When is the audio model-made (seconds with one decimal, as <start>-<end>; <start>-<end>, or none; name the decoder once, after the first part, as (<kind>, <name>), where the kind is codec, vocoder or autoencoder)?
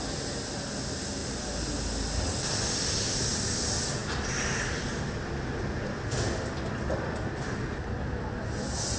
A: none